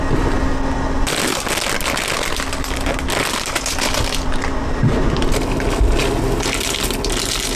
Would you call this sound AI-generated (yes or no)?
no